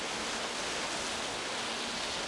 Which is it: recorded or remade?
recorded